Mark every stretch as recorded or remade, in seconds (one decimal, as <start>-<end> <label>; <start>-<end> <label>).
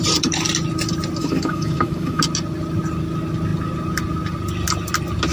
0.0-1.2 recorded; 1.2-2.2 remade; 2.2-5.3 recorded